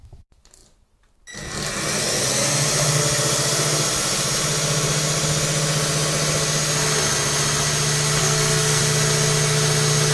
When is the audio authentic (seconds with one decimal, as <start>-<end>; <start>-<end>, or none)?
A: 0.0-8.2; 8.8-10.1